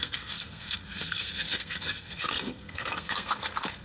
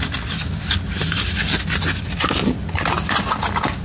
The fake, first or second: first